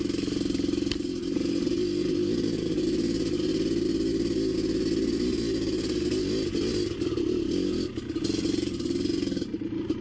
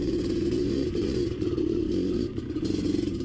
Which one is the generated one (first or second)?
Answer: second